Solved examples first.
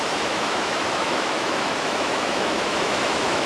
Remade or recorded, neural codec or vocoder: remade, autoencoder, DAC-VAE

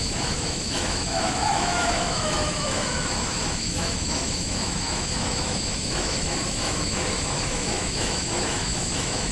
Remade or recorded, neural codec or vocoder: remade, autoencoder, DAC-VAE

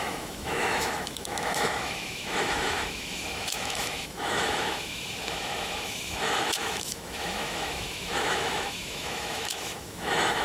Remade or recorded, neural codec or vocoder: remade, autoencoder, DAC-VAE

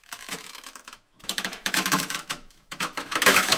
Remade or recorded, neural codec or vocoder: remade, autoencoder, DAC-VAE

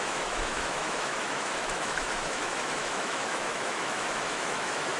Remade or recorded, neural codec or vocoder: remade, autoencoder, DAC-VAE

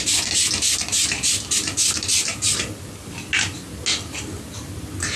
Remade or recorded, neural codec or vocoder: recorded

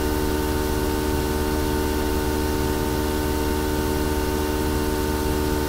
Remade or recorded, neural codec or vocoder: recorded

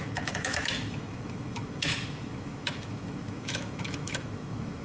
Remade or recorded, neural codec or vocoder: remade, autoencoder, DAC-VAE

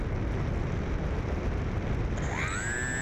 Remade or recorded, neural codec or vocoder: recorded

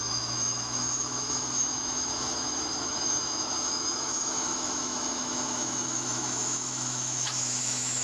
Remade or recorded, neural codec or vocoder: remade, autoencoder, DAC-VAE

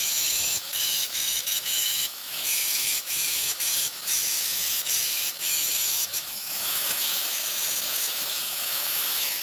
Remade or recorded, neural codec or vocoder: remade, autoencoder, DAC-VAE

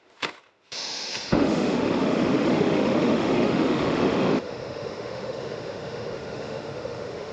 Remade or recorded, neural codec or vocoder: remade, autoencoder, DAC-VAE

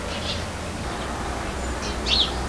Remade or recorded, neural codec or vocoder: recorded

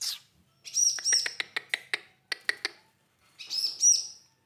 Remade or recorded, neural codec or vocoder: recorded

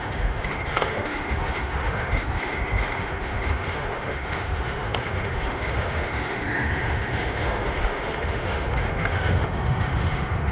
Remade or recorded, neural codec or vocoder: remade, autoencoder, DAC-VAE